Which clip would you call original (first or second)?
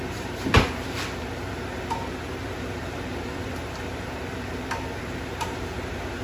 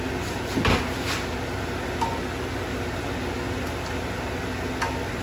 second